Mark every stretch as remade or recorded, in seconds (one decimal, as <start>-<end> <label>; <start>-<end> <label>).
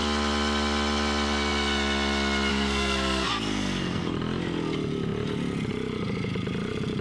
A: 0.0-2.5 recorded; 2.5-4.1 remade; 4.1-7.0 recorded